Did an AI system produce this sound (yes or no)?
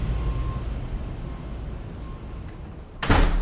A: no